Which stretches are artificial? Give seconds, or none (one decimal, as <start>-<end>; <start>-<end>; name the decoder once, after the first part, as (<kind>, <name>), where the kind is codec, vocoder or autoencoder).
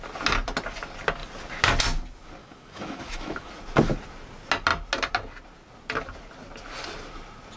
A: 2.4-3.5 (autoencoder, DAC-VAE)